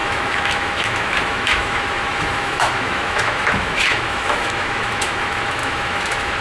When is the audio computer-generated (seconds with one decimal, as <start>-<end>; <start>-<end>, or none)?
0.0-6.4

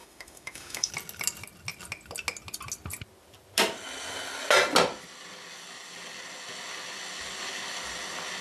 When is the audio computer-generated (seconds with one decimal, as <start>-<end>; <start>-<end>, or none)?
0.0-0.9

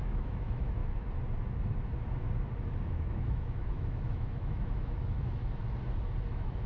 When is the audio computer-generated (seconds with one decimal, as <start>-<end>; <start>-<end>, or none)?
0.0-0.8; 2.9-5.6; 6.3-6.7

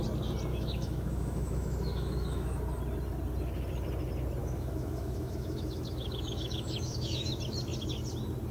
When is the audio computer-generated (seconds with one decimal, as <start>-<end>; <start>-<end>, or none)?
0.5-2.6; 4.4-7.3

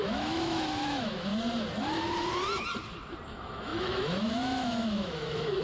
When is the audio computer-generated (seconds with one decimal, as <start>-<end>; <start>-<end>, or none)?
0.0-1.3; 3.3-5.6

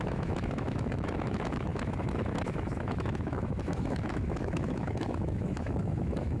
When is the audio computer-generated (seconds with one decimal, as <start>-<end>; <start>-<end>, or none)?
0.0-6.4